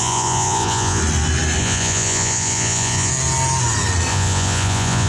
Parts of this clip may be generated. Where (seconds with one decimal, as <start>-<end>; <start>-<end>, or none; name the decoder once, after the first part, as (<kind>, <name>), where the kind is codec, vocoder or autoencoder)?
0.0-1.0 (vocoder, Vocos); 1.6-3.1; 4.1-5.1